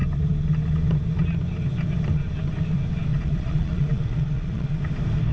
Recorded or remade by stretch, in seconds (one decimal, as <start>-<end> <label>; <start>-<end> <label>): 0.0-3.1 recorded; 3.1-4.8 remade; 4.8-5.3 recorded